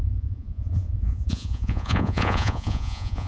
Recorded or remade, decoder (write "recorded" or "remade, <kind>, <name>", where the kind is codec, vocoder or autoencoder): remade, vocoder, Vocos